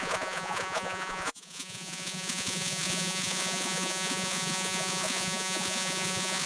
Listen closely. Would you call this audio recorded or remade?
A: remade